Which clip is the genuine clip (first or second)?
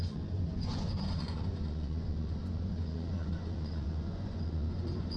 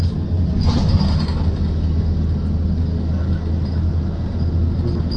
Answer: second